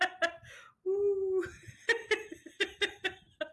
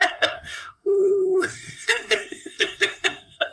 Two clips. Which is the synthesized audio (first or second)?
second